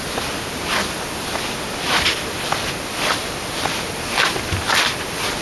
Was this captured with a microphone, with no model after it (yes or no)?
yes